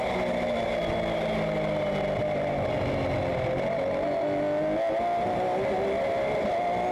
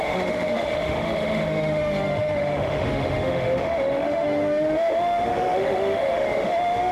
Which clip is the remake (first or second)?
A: second